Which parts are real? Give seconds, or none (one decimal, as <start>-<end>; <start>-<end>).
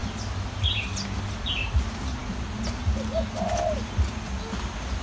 0.0-5.0